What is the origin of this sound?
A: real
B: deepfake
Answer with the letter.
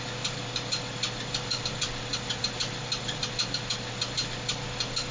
A